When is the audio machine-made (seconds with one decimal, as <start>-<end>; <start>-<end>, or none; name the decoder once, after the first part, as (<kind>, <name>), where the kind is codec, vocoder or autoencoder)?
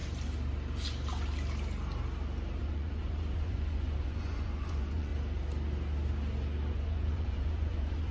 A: 2.6-5.1 (vocoder, Vocos); 6.7-8.1